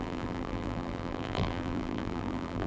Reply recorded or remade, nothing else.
remade